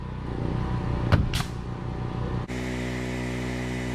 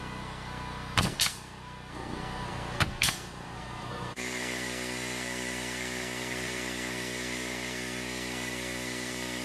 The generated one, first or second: second